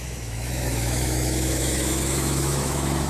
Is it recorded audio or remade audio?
remade